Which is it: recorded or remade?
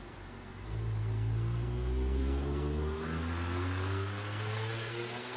remade